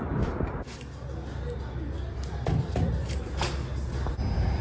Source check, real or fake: real